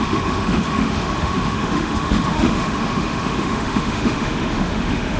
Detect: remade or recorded remade